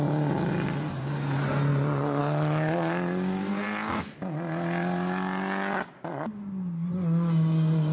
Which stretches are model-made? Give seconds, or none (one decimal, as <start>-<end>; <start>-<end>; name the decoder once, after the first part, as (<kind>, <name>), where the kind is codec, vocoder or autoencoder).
none